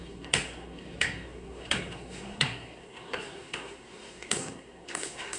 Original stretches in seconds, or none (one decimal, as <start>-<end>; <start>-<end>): none